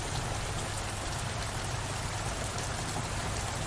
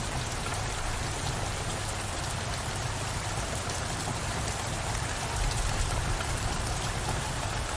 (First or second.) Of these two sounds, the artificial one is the second